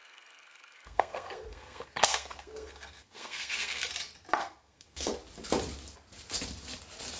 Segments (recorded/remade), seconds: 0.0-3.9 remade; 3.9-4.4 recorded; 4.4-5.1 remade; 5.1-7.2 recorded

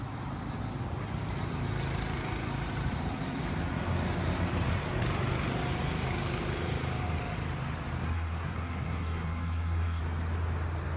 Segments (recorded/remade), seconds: 0.0-8.0 recorded; 8.0-10.0 remade; 10.0-11.0 recorded

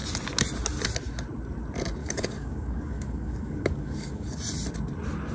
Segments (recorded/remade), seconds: 0.0-2.0 recorded; 2.0-4.4 remade; 4.4-5.3 recorded

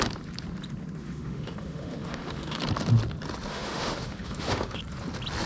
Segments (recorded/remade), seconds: 0.0-1.0 recorded; 1.0-2.6 remade; 2.6-3.5 recorded; 3.5-4.8 remade; 4.8-5.5 recorded